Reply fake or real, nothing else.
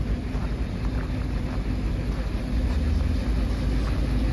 real